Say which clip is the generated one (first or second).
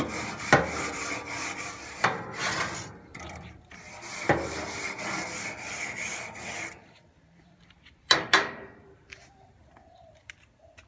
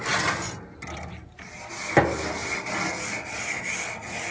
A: first